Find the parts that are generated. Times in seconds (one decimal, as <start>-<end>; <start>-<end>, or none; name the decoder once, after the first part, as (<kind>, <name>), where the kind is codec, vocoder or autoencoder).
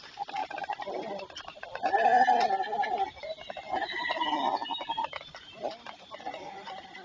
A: none